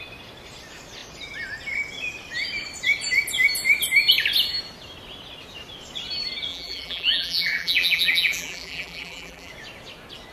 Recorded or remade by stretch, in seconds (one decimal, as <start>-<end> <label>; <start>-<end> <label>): 0.0-6.5 recorded; 6.5-9.5 remade; 9.5-10.3 recorded